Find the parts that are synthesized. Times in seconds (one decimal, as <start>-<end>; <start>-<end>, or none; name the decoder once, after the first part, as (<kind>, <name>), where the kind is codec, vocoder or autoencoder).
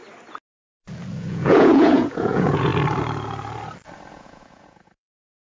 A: 1.3-2.7 (vocoder, Vocos); 4.1-5.5